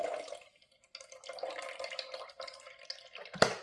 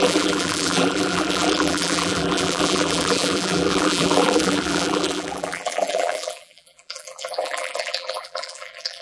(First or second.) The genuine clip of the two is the first